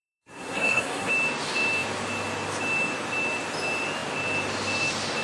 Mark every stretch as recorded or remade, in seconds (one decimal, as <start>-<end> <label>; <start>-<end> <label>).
0.0-1.1 remade; 1.1-5.2 recorded